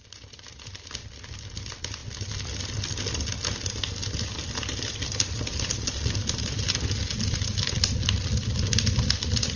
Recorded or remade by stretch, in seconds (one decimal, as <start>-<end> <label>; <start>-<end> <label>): 0.0-9.6 recorded

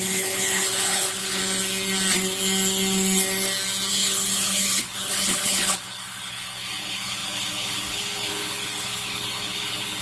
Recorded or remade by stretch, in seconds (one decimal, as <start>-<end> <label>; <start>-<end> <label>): 0.0-1.4 remade; 1.4-3.9 recorded; 3.9-10.0 remade

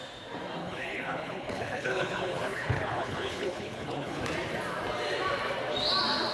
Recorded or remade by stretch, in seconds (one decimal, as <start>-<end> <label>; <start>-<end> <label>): 0.0-0.6 recorded; 0.6-4.2 remade; 4.2-6.3 recorded

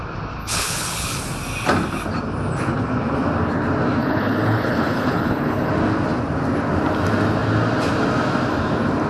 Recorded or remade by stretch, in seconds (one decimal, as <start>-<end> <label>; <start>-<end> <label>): 0.0-0.4 recorded; 0.4-1.2 remade; 1.2-4.0 recorded; 4.0-5.7 remade; 5.7-9.1 recorded